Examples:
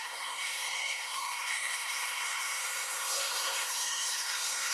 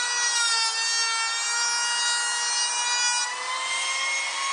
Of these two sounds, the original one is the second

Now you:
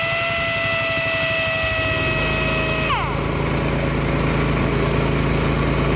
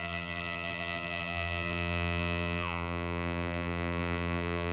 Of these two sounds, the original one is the first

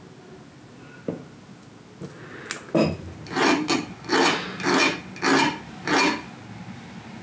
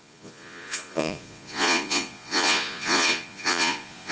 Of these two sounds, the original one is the first